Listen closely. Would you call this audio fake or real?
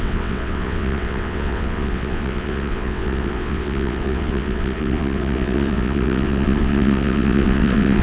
fake